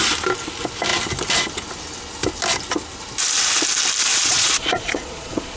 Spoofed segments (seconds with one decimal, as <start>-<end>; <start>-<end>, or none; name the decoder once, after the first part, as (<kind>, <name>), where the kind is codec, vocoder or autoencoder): 4.1-5.6 (vocoder, Vocos)